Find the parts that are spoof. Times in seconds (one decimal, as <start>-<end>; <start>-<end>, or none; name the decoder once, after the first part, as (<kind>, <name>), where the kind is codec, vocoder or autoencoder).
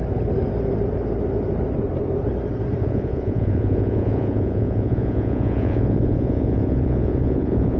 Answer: 2.8-7.8 (vocoder, Vocos)